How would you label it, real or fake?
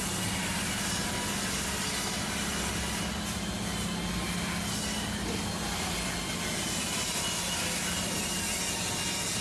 real